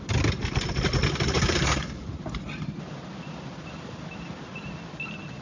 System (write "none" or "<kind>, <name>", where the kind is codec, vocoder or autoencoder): none